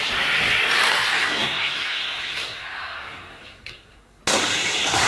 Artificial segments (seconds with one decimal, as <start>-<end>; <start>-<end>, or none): 1.1-4.2